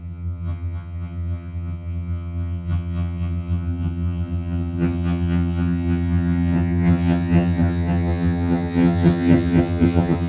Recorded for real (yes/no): no